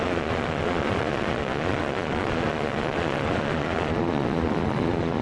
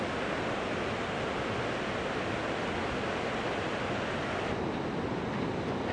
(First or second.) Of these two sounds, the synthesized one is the first